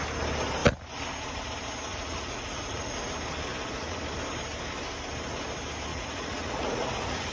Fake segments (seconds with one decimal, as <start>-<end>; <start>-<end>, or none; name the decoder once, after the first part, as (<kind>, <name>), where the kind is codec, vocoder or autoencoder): 1.9-3.1 (vocoder, Vocos); 3.5-4.0; 5.9-7.3